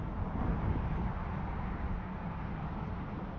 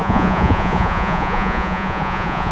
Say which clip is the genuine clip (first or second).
first